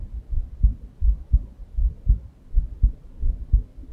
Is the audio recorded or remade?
recorded